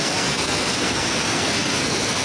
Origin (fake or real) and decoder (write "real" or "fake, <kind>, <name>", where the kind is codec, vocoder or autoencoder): fake, codec, SNAC